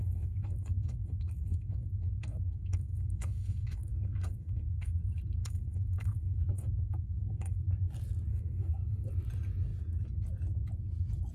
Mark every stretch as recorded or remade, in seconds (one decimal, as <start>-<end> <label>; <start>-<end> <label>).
0.0-5.0 remade; 5.0-5.4 recorded; 5.4-7.6 remade; 7.6-8.3 recorded; 8.3-9.1 remade; 9.1-11.3 recorded